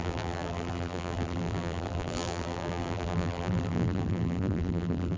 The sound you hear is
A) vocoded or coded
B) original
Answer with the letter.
A